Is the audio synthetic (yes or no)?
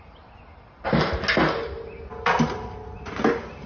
no